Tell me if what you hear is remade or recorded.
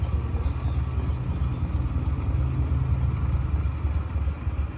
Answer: recorded